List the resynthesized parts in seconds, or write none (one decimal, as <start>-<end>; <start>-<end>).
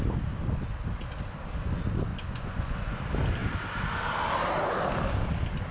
2.1-3.0